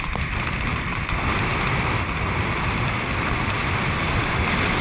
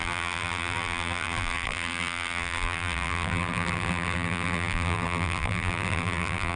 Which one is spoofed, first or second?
second